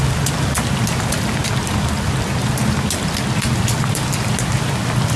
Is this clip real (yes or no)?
yes